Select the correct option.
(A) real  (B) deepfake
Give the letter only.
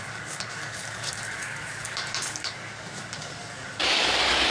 B